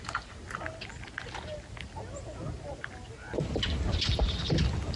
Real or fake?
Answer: real